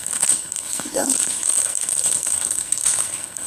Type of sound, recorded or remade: remade